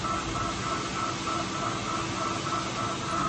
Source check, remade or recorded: recorded